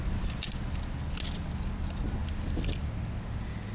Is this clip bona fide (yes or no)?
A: yes